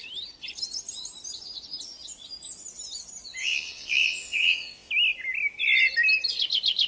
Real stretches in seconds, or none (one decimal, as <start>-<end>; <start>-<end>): 0.0-3.4; 4.9-6.9